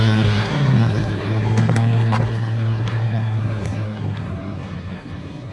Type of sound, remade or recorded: remade